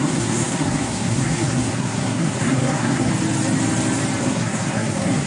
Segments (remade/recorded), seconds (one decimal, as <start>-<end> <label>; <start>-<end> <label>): 0.0-3.1 remade; 3.1-4.2 recorded; 4.2-5.3 remade